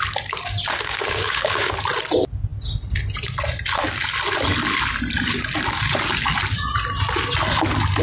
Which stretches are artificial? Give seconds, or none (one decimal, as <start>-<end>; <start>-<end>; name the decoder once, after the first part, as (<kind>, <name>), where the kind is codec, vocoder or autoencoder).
0.7-1.7 (codec, DAC)